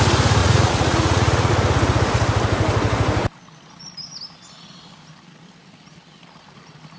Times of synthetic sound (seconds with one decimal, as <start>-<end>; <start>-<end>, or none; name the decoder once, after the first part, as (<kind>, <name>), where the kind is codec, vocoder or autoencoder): 0.4-1.5 (vocoder, Vocos)

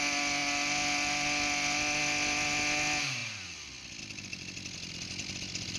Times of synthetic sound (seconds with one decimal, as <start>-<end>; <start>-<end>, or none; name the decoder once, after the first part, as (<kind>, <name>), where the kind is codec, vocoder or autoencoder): none

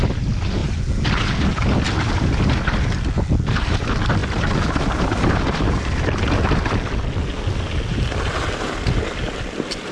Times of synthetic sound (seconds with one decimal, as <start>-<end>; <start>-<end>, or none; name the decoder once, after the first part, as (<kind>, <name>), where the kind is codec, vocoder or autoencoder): none

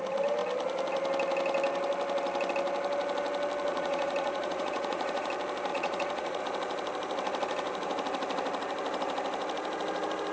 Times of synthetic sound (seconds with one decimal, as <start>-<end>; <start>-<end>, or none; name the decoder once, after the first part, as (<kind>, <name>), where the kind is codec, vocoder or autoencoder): 3.7-5.3 (vocoder, Vocos); 5.7-6.4